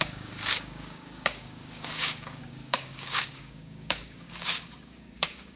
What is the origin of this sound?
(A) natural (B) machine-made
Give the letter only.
B